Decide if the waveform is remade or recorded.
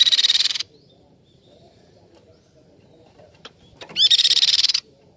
remade